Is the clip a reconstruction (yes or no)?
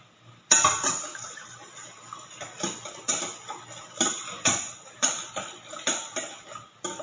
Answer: no